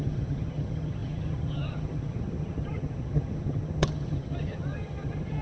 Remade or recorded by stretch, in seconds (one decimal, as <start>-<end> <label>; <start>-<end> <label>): 0.0-5.4 remade